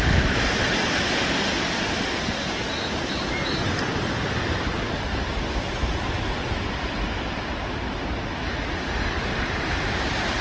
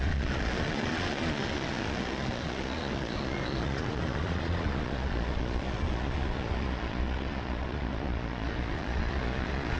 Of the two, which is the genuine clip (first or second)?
first